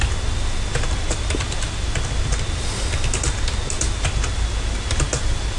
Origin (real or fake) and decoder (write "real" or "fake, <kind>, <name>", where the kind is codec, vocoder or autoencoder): real